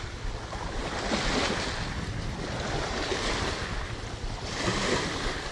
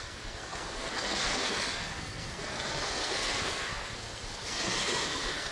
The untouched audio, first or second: first